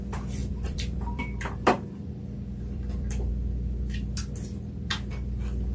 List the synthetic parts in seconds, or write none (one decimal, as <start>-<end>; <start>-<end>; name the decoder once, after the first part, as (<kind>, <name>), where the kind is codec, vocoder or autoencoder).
0.4-3.3 (vocoder, BigVGAN v2)